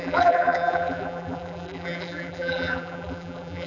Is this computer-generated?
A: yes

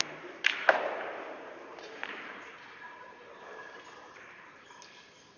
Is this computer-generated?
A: yes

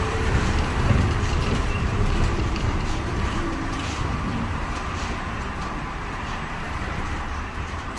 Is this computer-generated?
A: yes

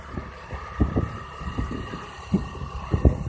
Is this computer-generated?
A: yes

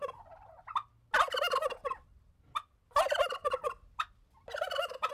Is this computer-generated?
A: no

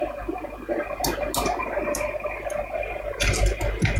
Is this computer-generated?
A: no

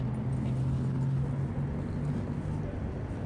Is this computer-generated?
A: no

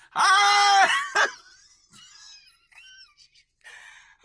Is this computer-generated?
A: no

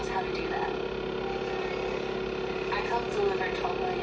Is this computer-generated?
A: no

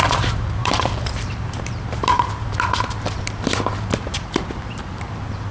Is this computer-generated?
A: yes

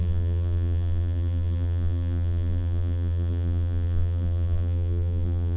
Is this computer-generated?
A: yes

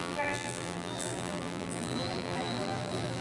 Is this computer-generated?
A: yes